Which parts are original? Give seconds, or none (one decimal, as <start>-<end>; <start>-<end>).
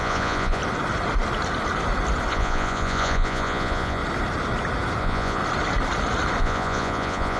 0.6-2.3; 4.0-5.0; 5.4-6.4